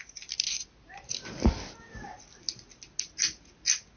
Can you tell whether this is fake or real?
real